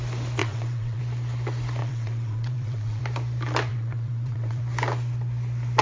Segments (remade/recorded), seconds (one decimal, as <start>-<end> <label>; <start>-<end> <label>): 0.0-0.4 recorded; 0.4-1.0 remade; 1.0-1.8 recorded; 1.8-3.0 remade; 3.0-3.7 recorded; 3.7-4.6 remade; 4.6-5.8 recorded